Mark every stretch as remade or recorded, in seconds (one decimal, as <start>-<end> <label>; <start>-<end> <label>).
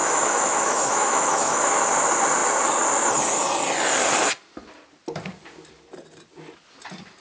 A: 0.0-1.7 remade; 1.7-7.2 recorded